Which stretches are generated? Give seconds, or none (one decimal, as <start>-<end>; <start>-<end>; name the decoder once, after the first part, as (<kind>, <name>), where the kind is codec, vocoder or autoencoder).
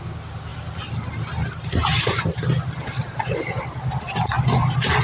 none